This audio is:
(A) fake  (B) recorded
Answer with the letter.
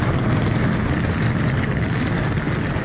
B